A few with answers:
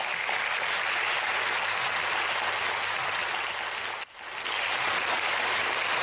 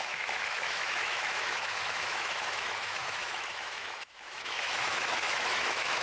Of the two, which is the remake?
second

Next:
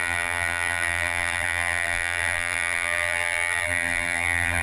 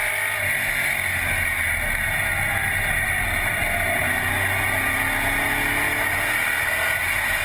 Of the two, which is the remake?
first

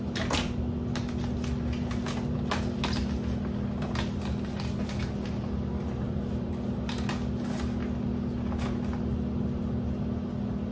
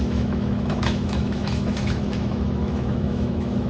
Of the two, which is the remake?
second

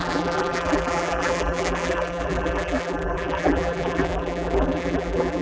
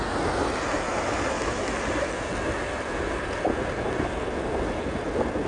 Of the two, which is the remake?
first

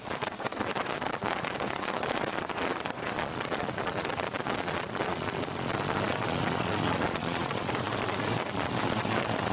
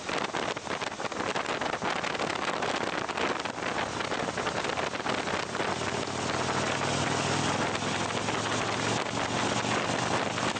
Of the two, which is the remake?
first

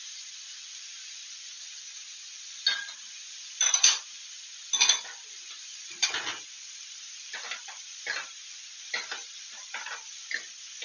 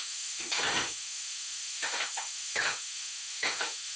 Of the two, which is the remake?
second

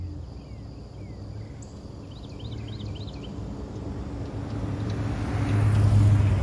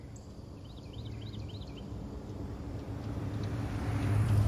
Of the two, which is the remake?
second